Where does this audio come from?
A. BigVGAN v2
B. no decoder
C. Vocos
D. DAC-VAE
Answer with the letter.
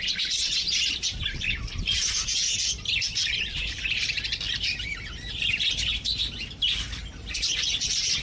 A